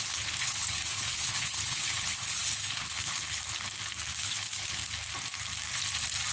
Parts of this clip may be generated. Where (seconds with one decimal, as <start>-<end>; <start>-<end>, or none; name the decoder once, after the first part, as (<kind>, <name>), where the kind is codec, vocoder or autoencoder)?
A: 0.0-3.4 (codec, HILCodec); 4.2-4.8